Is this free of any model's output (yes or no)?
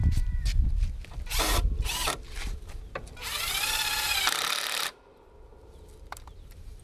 no